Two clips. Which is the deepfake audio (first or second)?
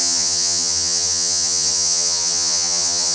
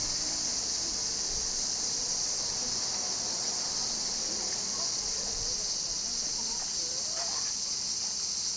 first